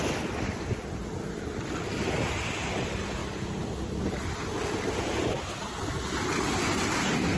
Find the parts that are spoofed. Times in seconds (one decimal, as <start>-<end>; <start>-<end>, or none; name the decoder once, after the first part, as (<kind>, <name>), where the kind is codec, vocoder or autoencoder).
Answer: none